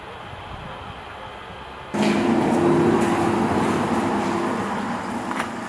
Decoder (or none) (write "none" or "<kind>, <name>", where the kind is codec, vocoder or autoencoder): none